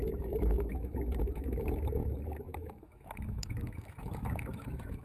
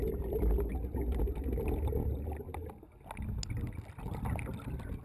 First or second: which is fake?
first